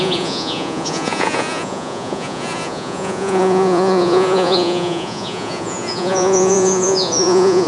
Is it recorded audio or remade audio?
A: remade